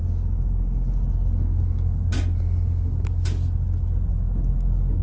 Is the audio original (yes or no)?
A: yes